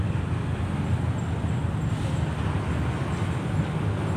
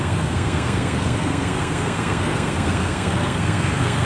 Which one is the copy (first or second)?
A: second